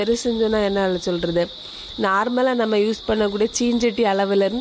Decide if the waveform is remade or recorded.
recorded